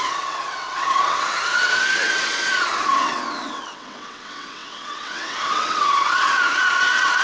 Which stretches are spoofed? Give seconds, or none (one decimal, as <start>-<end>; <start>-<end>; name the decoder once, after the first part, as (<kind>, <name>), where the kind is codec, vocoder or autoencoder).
0.0-7.2 (vocoder, WaveNeXt)